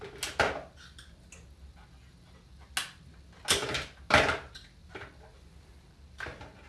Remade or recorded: recorded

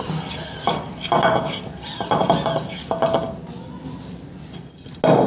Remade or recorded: recorded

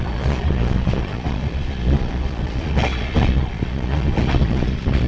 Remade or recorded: remade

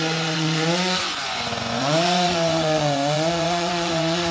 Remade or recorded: remade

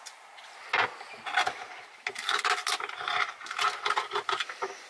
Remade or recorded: recorded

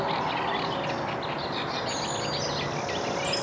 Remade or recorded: recorded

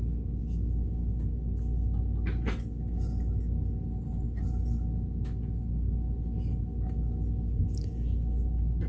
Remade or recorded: recorded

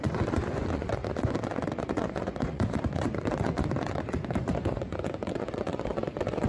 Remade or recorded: remade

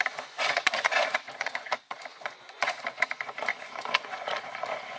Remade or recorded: remade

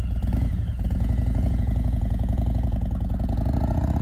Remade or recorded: remade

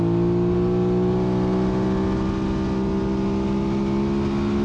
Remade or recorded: recorded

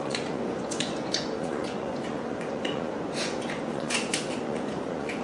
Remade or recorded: remade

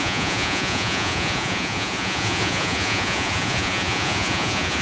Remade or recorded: remade